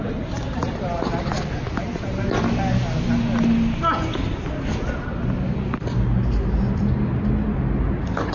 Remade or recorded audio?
recorded